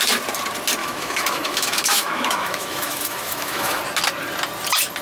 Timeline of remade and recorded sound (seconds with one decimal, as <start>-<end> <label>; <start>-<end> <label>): 0.0-0.8 recorded; 0.8-3.8 remade; 3.8-5.0 recorded